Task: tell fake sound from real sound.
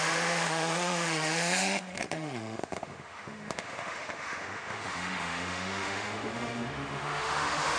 fake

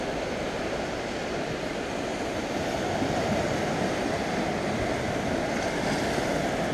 real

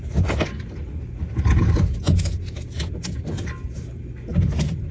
real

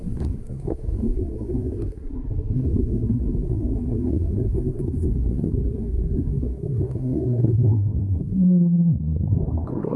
fake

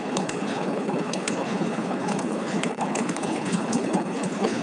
fake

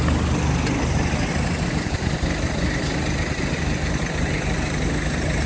real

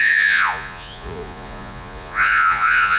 fake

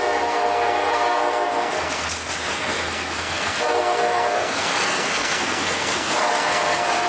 fake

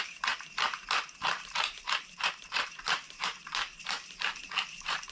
fake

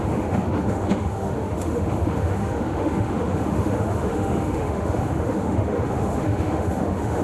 fake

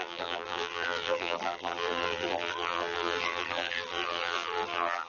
fake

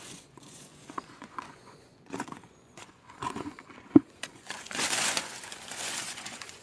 fake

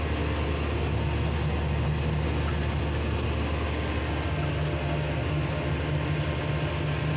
real